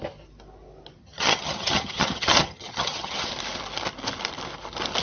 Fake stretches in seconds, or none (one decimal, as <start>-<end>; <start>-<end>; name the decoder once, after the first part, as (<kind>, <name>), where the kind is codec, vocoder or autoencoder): 1.0-3.3 (vocoder, HiFi-GAN)